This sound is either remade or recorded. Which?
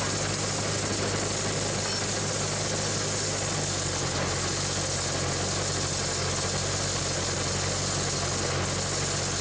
recorded